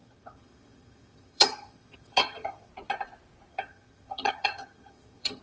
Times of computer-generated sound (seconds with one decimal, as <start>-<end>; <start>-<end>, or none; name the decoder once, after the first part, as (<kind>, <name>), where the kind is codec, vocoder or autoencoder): 0.0-2.7 (vocoder, HiFi-GAN); 3.5-5.4